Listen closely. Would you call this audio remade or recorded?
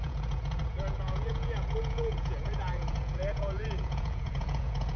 remade